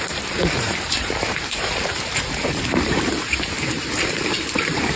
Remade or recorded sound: remade